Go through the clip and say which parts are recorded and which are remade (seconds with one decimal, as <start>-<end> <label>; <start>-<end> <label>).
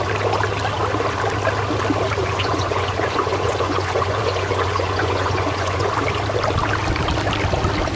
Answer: 0.0-2.2 recorded; 2.2-5.9 remade; 5.9-8.0 recorded